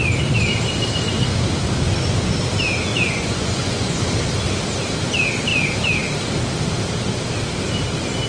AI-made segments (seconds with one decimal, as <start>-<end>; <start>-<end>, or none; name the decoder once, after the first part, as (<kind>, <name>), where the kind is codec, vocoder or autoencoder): 2.9-4.0 (vocoder, Vocos)